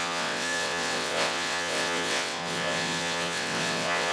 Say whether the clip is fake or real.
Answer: fake